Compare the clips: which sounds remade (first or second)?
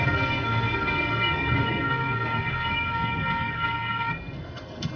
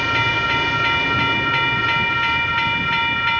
first